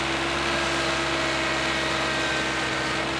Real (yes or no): yes